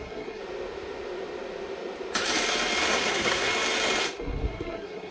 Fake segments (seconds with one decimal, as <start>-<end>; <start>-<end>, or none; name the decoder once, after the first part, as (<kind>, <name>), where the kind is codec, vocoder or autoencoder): 0.0-0.4 (codec, SNAC); 2.9-3.5; 4.0-5.1